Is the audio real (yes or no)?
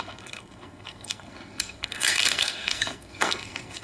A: no